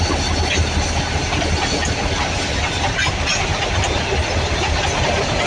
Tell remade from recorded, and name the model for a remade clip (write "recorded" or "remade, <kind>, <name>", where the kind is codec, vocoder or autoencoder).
recorded